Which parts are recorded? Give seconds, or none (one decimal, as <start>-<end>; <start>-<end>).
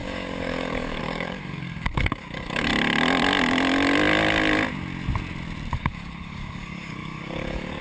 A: 2.7-5.7